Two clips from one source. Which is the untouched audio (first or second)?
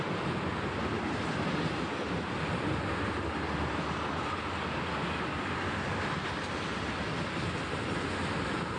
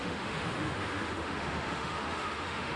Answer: first